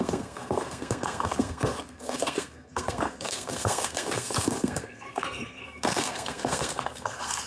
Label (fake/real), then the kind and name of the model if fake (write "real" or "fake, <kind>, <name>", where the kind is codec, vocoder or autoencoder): fake, codec, SNAC